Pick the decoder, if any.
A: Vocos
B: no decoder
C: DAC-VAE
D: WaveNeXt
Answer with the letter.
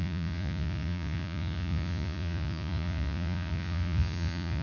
A